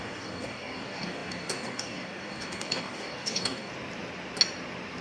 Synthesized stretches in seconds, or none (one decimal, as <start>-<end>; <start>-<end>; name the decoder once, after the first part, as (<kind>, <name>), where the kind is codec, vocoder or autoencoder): 0.0-3.7 (codec, DAC)